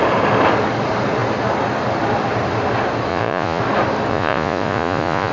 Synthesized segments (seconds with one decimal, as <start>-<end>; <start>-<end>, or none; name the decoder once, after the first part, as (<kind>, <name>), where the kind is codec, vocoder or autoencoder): 3.1-3.6 (vocoder, Vocos); 4.1-5.3